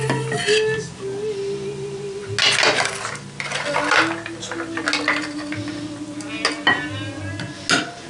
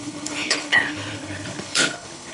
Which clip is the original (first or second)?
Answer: first